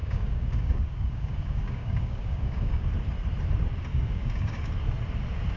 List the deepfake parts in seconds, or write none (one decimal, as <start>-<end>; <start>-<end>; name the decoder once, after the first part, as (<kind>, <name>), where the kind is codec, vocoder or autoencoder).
0.0-2.9 (codec, DAC); 3.9-4.7